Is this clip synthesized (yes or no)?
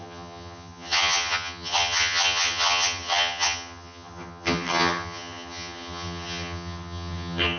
yes